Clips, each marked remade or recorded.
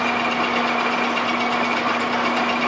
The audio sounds recorded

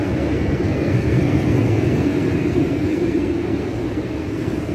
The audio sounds remade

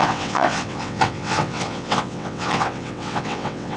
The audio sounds remade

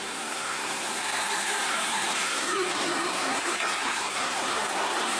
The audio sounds remade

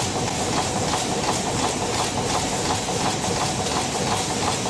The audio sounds recorded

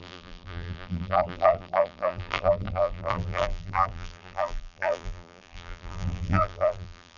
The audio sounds remade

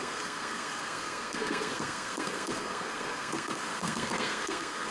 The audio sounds remade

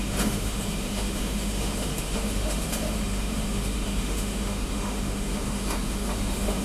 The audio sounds remade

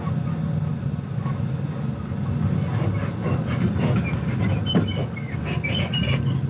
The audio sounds recorded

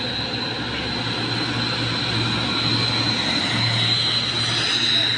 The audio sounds recorded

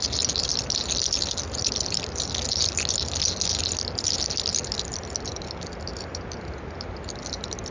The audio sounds recorded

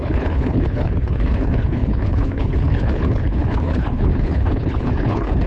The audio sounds remade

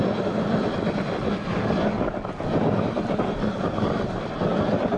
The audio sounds recorded